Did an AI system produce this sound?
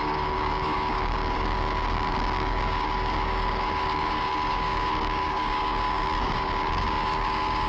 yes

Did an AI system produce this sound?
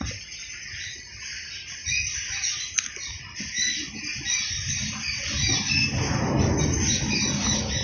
no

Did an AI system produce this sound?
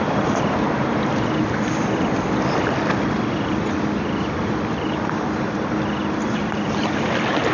yes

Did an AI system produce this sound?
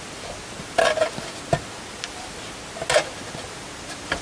no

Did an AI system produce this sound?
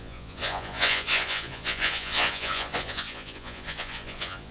yes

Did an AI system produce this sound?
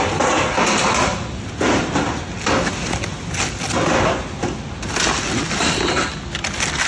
no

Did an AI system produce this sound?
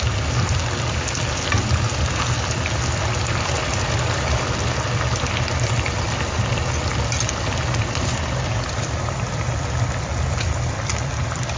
no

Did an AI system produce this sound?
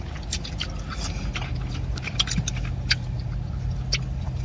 no